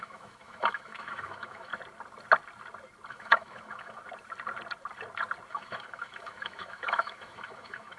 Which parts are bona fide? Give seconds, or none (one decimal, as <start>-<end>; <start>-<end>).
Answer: 1.7-3.1; 4.0-5.5